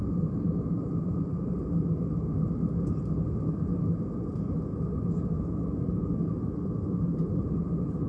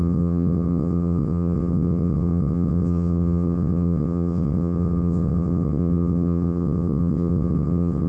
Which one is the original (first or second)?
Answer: first